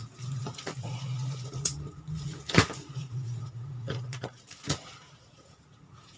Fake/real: fake